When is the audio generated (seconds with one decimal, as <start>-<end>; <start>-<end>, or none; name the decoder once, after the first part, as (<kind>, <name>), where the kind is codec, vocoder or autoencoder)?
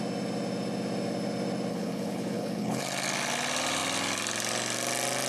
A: 1.7-2.8 (codec, HILCodec)